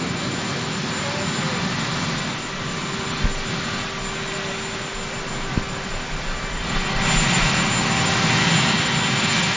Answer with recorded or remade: recorded